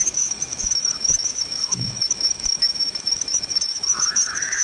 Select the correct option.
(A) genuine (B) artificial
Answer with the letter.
B